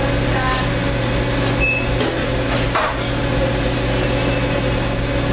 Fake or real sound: real